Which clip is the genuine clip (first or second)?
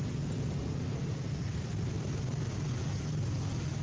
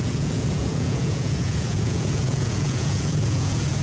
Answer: first